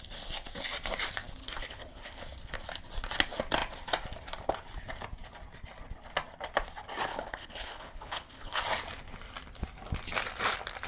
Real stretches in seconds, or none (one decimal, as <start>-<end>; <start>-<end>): 0.0-1.4; 2.2-7.1; 8.6-10.9